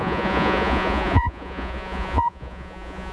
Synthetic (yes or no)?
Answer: yes